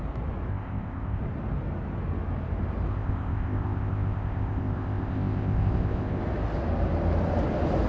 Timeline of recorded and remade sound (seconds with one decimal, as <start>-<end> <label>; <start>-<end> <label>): 0.0-0.5 recorded; 0.5-1.2 remade; 1.2-2.9 recorded; 2.9-6.2 remade; 6.2-7.9 recorded